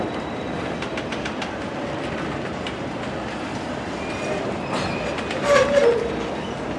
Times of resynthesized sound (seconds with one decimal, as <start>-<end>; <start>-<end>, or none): 0.0-4.1